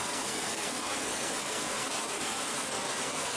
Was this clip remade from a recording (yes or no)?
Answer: yes